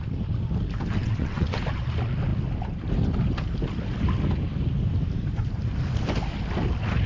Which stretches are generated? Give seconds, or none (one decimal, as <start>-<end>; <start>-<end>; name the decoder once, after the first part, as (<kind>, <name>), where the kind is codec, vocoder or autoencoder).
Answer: 1.0-1.6 (vocoder, WaveNeXt)